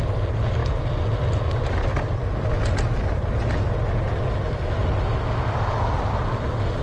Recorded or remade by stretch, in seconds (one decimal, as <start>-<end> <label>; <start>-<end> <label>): 0.0-6.8 recorded